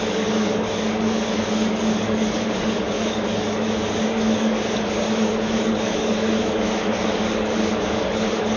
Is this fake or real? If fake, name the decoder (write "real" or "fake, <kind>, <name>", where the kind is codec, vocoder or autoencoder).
fake, codec, DAC